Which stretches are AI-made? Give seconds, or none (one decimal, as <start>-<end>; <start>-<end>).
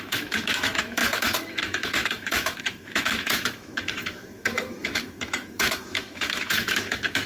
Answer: 0.0-7.3